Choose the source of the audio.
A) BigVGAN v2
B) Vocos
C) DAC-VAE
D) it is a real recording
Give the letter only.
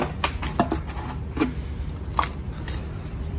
D